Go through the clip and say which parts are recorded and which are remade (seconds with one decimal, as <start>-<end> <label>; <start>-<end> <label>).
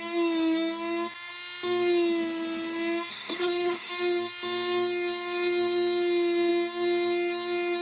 0.0-3.1 recorded; 3.1-3.9 remade; 3.9-7.8 recorded